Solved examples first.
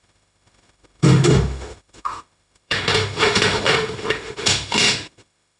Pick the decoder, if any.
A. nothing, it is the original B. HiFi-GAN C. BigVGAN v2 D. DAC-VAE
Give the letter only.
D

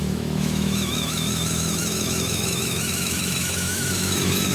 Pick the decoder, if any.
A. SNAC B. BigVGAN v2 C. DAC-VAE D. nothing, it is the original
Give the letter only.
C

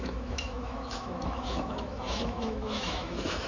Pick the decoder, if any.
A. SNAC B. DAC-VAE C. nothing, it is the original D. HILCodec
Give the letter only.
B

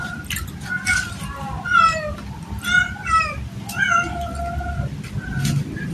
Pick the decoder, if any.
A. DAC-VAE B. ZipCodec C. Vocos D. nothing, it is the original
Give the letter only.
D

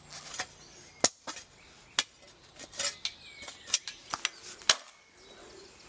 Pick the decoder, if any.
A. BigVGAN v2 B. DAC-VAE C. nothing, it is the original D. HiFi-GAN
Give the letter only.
C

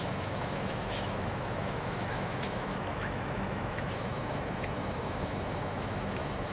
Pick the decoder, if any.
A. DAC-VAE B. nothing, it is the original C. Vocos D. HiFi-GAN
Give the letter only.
A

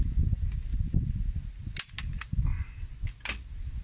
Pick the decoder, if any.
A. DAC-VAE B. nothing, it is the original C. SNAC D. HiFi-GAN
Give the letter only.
B